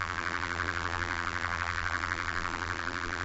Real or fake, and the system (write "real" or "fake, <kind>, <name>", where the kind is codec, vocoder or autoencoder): fake, vocoder, BigVGAN v2